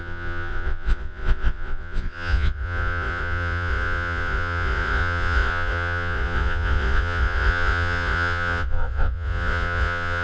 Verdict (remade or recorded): remade